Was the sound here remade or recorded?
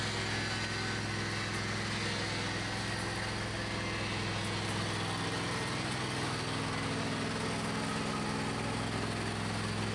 recorded